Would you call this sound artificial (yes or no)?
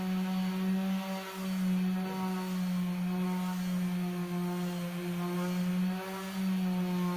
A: no